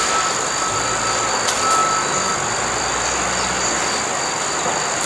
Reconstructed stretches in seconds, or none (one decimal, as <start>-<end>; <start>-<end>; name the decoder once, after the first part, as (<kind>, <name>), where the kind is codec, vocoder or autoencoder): none